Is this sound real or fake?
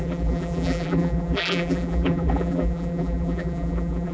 fake